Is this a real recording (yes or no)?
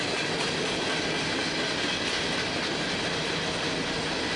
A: yes